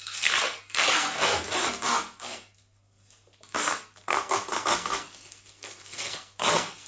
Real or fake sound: fake